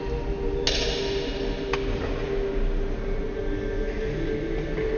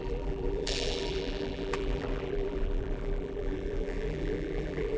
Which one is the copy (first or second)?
second